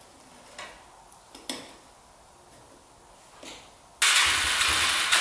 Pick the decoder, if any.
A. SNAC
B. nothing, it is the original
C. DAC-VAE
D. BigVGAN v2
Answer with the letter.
B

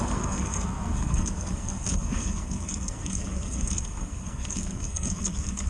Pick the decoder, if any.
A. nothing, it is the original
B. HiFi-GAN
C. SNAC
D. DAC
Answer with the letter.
C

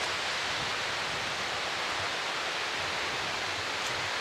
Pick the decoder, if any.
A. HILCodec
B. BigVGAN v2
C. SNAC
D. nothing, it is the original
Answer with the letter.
D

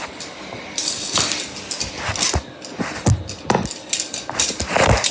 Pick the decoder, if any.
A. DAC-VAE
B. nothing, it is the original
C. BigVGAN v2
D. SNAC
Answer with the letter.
B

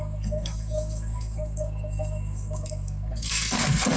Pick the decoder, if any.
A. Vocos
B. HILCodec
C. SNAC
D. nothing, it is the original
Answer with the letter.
C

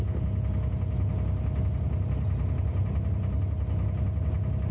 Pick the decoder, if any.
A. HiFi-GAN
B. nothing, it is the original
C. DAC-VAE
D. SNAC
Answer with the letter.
B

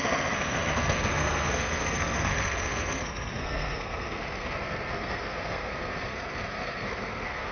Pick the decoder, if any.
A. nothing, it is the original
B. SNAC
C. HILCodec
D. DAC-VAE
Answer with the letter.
B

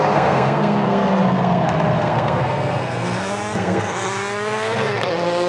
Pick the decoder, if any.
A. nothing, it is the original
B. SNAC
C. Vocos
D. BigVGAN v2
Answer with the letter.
B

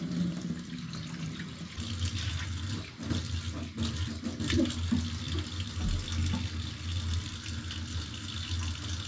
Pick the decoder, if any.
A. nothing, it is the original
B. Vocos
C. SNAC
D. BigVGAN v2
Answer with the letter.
A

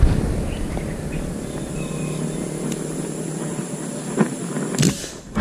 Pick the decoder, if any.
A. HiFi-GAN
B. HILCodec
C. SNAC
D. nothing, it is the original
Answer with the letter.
D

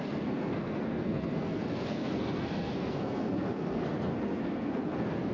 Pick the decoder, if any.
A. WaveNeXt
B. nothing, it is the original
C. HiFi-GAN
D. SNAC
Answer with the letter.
D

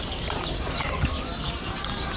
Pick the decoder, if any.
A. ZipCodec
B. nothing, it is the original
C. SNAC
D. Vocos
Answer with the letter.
B